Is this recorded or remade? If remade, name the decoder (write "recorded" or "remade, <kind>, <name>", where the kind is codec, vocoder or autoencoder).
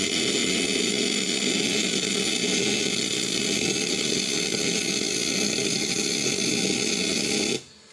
recorded